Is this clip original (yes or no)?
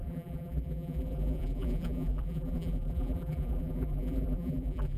no